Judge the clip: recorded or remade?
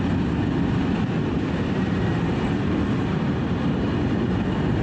remade